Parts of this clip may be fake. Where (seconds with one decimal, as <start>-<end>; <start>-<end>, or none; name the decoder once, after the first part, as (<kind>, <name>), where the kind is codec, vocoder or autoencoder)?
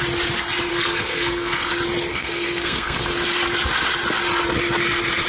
0.7-1.7 (codec, SNAC); 2.1-3.1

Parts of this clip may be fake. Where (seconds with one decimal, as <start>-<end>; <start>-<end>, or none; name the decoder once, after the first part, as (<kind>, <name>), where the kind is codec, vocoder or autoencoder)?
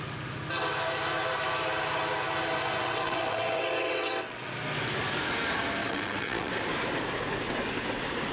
2.8-4.5 (vocoder, WaveNeXt); 5.8-6.5